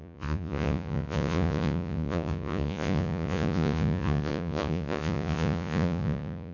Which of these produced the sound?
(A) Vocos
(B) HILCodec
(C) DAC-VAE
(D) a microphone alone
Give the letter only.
A